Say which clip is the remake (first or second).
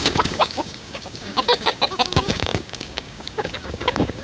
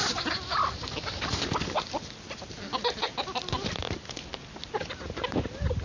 first